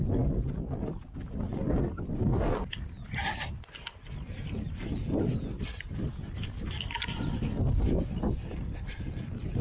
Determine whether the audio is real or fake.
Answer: real